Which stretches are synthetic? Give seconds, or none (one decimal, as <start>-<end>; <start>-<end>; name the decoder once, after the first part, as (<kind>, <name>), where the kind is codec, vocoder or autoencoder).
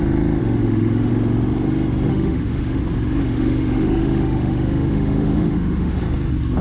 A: 0.4-1.1 (autoencoder, DAC-VAE); 2.1-2.8; 3.2-6.0